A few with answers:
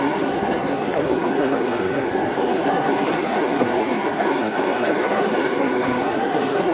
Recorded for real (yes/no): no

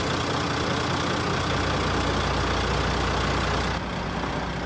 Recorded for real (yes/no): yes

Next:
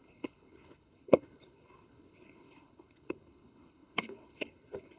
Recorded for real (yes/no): no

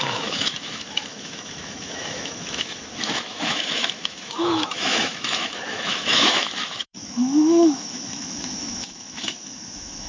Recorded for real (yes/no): no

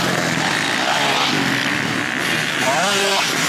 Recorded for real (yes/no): yes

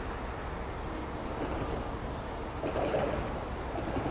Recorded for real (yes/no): yes